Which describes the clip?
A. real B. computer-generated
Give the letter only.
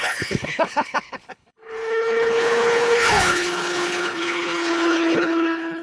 B